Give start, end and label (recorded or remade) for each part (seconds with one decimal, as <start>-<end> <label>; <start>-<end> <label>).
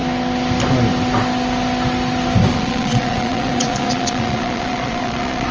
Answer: 0.0-2.5 recorded; 2.5-5.5 remade